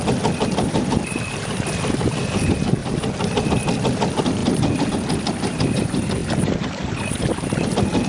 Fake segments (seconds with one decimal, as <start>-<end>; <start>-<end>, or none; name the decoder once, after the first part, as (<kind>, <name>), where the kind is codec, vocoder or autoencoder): 0.0-2.8 (vocoder, BigVGAN v2); 3.5-4.4; 4.9-6.2